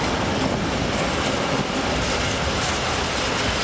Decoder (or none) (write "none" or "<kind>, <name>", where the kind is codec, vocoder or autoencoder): none